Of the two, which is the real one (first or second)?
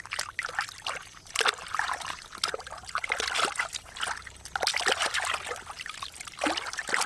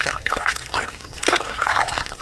first